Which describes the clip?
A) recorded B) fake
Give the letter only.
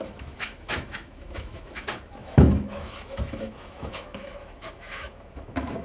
B